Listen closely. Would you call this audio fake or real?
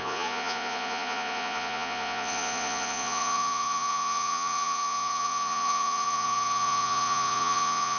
fake